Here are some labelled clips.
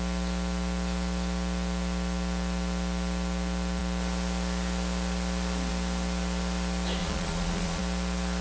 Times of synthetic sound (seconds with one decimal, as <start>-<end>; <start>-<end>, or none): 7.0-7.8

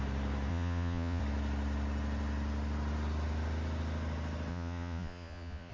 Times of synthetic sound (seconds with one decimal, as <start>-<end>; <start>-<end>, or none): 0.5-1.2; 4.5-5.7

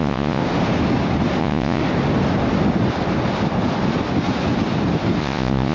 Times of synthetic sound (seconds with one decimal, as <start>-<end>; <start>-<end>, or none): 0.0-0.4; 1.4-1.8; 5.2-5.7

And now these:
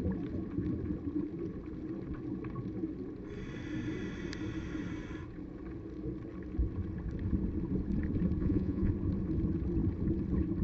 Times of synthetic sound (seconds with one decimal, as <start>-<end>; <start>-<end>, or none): 8.4-8.9

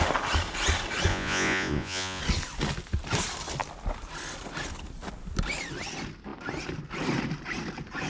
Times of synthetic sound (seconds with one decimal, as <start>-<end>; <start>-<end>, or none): 1.1-2.2

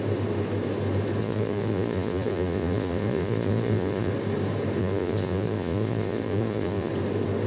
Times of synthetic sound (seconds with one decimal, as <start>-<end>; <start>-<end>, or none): 1.2-4.1; 4.8-6.9

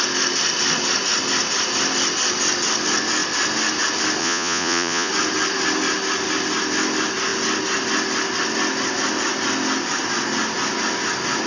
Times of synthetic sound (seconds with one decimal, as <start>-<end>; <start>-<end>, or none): 4.2-5.1

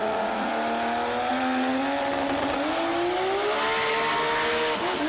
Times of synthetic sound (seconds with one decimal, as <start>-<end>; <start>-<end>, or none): 0.0-0.5; 1.3-1.8